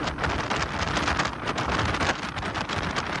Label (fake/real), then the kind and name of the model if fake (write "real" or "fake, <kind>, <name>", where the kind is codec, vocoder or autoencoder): real